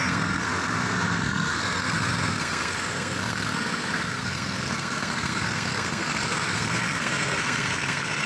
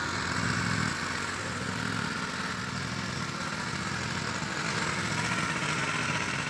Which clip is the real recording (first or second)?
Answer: second